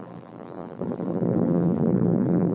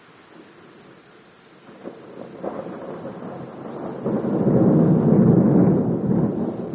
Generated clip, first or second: first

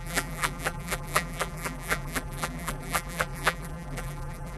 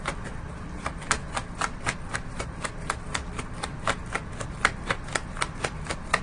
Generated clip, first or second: first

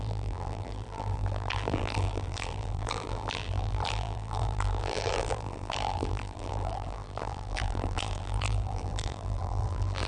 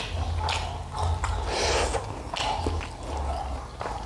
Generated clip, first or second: first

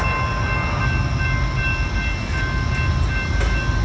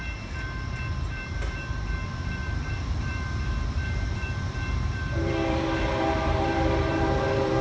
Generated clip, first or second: second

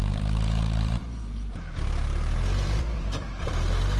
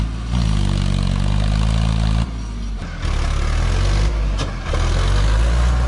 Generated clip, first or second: first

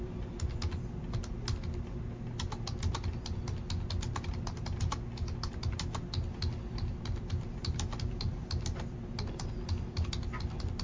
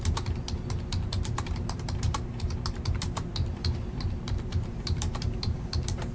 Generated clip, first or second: second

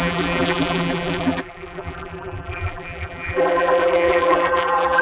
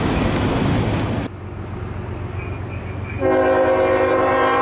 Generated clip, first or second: first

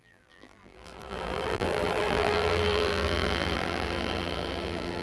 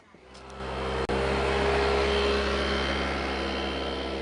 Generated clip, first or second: first